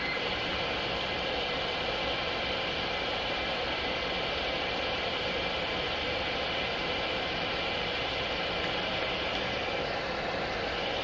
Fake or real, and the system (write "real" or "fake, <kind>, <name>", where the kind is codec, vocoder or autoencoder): real